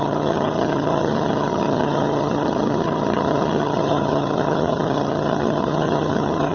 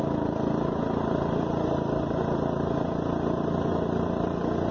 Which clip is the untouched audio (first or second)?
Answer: second